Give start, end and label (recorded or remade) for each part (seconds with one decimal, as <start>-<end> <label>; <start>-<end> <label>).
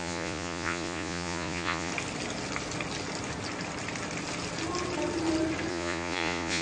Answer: 0.0-1.9 remade; 1.9-5.7 recorded; 5.7-6.6 remade